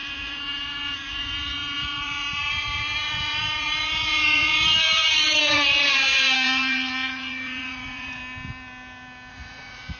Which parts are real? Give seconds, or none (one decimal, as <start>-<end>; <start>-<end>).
8.2-9.3

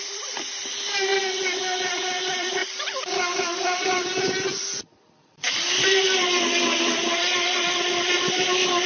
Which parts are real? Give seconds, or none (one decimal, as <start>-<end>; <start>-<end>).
1.1-1.9; 2.6-3.4; 4.5-5.2

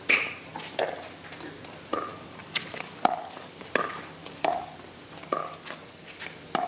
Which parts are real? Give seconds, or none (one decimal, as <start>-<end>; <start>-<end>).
0.0-2.1; 3.7-4.2; 4.7-5.4; 6.2-6.7